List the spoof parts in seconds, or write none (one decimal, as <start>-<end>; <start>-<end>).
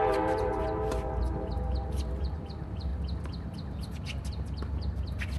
0.0-2.9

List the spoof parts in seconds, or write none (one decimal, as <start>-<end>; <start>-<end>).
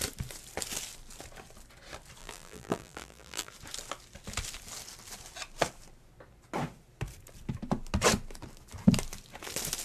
2.2-3.5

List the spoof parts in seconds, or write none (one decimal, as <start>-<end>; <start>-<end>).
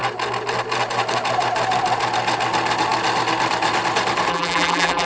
4.3-5.1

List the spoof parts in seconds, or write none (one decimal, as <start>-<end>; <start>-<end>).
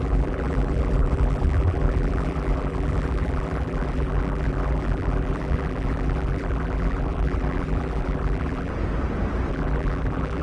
0.0-8.7; 9.5-10.4